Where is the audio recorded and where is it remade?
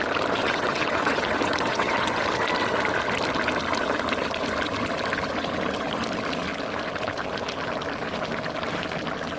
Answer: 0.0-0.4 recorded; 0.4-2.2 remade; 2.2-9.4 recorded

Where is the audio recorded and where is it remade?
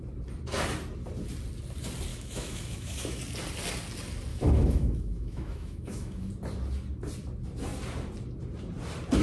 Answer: 0.0-2.1 recorded; 2.1-3.2 remade; 3.2-4.3 recorded; 4.3-6.3 remade; 6.3-9.2 recorded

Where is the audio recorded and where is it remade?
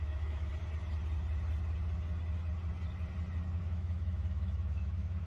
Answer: 0.0-0.5 remade; 0.5-3.6 recorded; 3.6-5.3 remade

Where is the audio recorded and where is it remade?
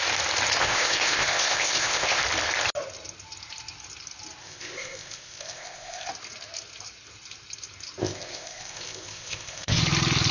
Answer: 0.0-0.6 recorded; 0.6-2.2 remade; 2.2-4.4 recorded; 4.4-6.1 remade; 6.1-8.0 recorded; 8.0-9.8 remade; 9.8-10.3 recorded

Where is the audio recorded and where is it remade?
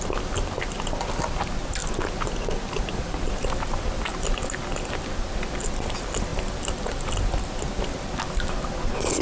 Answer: 0.0-9.2 recorded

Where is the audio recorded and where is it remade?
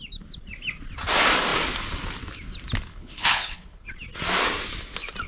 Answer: 0.0-2.9 recorded; 2.9-3.9 remade; 3.9-5.3 recorded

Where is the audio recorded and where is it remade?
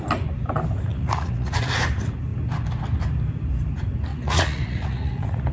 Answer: 0.0-0.9 recorded; 0.9-1.8 remade; 1.8-4.1 recorded; 4.1-5.5 remade